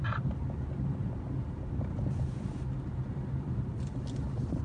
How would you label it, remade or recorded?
recorded